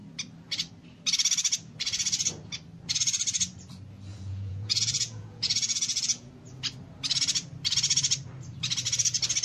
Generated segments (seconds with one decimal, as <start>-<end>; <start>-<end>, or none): 4.1-6.3